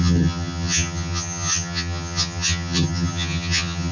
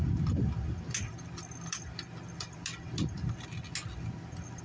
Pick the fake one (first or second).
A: first